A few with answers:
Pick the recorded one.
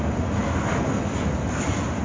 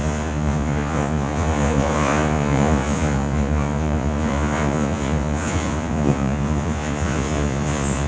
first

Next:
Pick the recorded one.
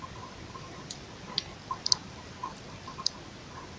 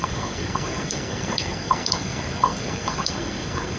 first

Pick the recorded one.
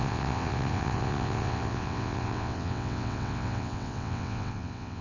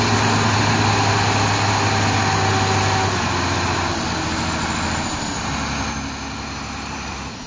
second